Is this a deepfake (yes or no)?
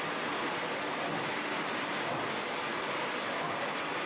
no